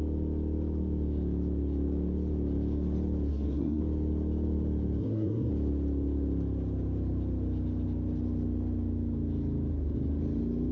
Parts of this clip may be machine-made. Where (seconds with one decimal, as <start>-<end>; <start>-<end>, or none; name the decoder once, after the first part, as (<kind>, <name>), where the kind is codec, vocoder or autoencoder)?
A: 3.3-3.8 (codec, SNAC); 5.0-5.5

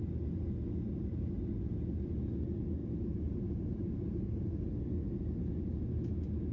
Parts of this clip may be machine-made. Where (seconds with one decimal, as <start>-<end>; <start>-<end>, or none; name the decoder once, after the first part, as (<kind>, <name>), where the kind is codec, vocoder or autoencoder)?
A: 2.8-4.7 (vocoder, BigVGAN v2)